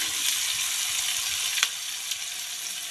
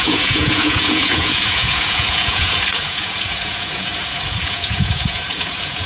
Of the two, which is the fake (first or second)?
second